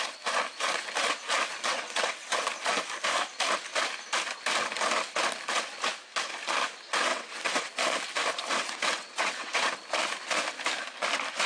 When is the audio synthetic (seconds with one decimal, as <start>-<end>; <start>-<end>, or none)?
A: 1.7-2.4; 7.1-7.7; 8.6-9.7